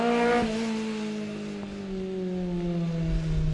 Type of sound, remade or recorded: recorded